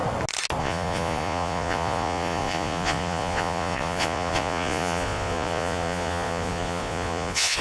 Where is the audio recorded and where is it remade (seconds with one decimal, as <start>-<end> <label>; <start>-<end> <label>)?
0.0-0.6 recorded; 0.6-7.6 remade